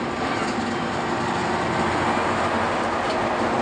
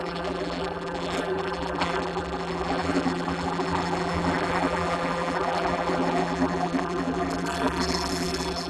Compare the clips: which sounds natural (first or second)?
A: first